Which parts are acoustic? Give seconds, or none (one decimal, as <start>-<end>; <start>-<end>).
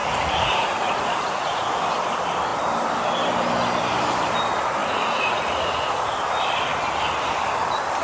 1.7-4.8; 6.1-8.0